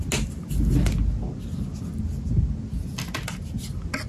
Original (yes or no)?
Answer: yes